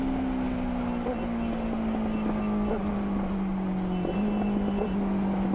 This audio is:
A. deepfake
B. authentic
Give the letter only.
B